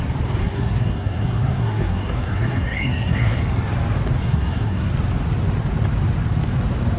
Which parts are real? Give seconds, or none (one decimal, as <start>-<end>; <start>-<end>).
0.0-0.4; 3.4-4.2; 4.9-7.0